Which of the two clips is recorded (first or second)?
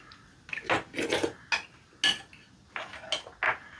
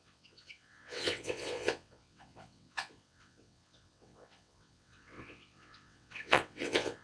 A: first